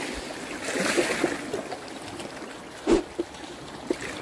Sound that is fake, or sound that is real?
real